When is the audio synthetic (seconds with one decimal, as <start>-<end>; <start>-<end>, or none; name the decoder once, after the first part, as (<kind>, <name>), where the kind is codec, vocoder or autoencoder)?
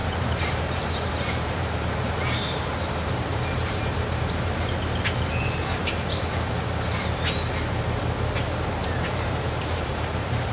0.0-3.8 (vocoder, BigVGAN v2); 5.6-6.2; 8.8-10.5